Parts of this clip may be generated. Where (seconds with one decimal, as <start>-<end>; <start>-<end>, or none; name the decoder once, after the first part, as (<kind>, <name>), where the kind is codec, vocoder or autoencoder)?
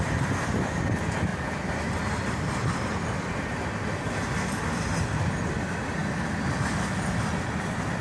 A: none